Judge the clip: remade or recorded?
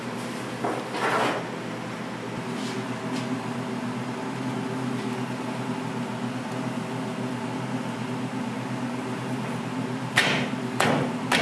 recorded